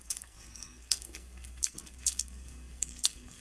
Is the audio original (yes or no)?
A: no